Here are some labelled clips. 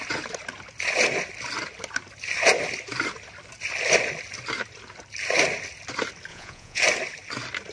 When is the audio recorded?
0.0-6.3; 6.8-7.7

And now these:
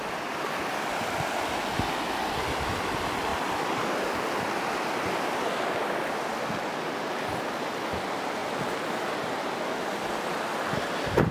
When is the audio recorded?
0.0-11.3

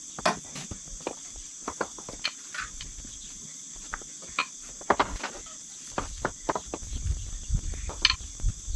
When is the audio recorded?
0.0-8.8

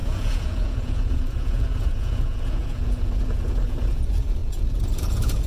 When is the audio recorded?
none

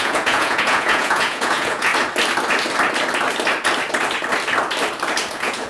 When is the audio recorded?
1.9-5.3

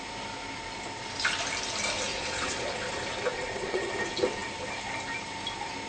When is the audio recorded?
0.0-2.1; 2.9-3.3; 3.9-5.9